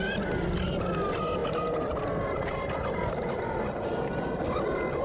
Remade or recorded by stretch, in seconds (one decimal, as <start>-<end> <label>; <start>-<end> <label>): 0.0-5.0 recorded